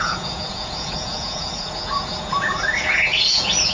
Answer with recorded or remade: remade